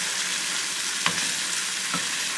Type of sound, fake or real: real